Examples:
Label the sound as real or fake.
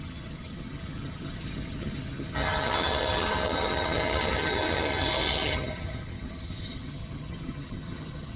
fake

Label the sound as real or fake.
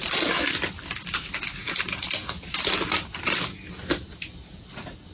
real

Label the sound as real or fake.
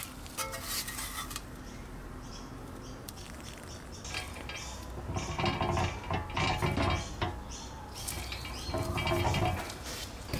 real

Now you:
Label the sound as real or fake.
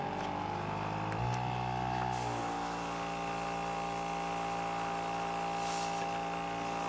real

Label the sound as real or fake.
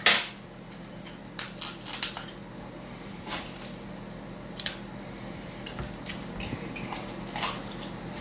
real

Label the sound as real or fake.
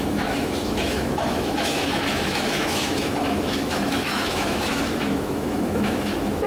fake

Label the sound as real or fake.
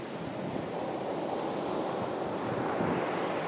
real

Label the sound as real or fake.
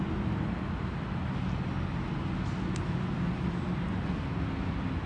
real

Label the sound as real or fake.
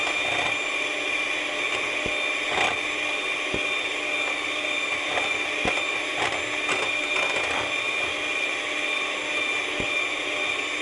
real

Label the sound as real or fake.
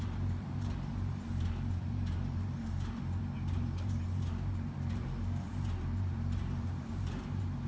fake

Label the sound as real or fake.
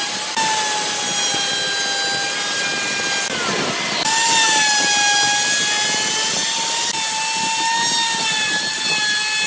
real